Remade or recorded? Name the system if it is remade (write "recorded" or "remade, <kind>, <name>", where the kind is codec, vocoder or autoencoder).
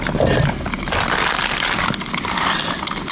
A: recorded